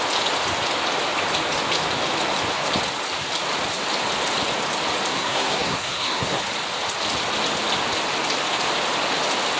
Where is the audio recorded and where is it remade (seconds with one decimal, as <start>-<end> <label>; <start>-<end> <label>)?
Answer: 0.0-5.1 recorded; 5.1-6.4 remade; 6.4-9.6 recorded